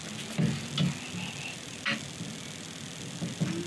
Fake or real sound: real